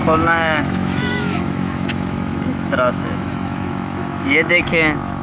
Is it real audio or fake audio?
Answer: fake